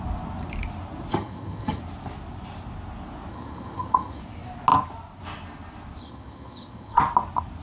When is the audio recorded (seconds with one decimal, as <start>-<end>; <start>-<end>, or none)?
0.0-1.1; 1.8-3.3; 4.2-6.0; 7.0-7.6